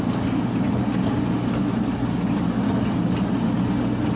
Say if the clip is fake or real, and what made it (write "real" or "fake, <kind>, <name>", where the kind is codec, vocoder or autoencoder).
real